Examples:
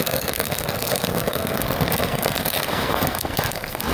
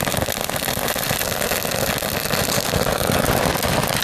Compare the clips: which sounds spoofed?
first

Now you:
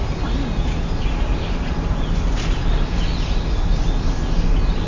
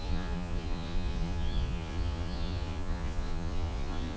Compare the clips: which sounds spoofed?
second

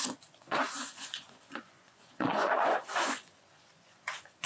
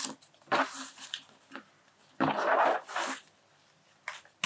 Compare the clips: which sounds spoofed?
first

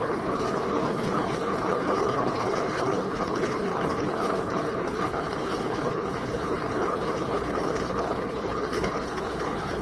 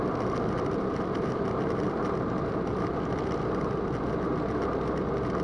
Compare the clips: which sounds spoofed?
first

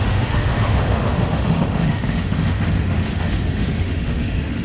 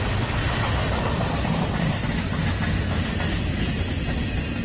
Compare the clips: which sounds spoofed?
first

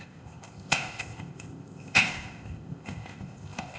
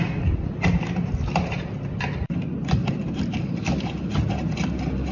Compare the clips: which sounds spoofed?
first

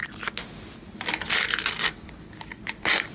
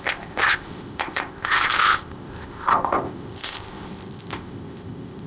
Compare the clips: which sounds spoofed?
second